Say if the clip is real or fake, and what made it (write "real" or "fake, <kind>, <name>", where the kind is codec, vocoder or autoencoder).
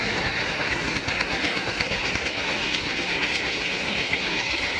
fake, codec, SNAC